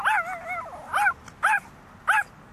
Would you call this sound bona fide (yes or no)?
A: yes